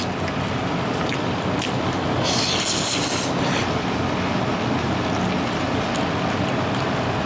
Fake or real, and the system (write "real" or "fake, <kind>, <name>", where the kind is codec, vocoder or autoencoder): real